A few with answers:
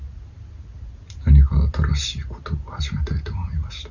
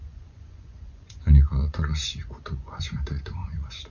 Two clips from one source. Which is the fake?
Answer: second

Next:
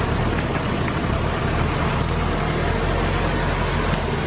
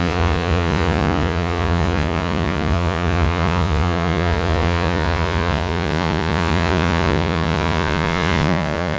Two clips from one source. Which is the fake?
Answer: second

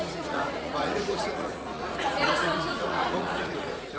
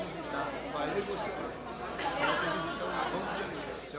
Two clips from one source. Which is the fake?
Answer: first